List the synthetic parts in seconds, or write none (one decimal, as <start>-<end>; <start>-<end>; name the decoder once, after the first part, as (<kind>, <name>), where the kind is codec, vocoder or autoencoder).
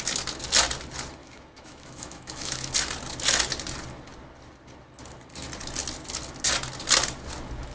1.2-2.7 (autoencoder, DAC-VAE)